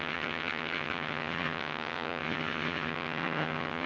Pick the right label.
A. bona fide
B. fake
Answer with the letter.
B